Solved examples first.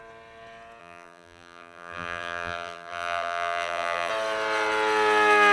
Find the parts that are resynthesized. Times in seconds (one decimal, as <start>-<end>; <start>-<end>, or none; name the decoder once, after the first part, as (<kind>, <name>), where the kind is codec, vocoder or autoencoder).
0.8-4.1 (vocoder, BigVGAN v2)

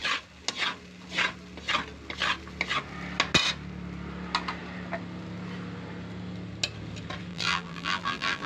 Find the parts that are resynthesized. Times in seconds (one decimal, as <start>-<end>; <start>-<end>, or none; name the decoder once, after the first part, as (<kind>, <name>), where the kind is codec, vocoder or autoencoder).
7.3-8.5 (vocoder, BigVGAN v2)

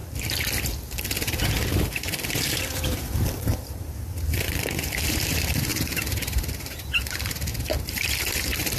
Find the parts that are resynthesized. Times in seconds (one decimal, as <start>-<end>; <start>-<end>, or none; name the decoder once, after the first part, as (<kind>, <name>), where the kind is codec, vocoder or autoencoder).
0.9-8.8 (vocoder, BigVGAN v2)

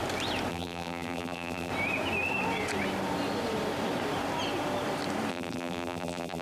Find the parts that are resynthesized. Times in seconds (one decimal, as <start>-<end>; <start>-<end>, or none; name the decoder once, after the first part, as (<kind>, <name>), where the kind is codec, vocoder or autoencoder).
0.5-1.7 (vocoder, BigVGAN v2); 5.3-6.4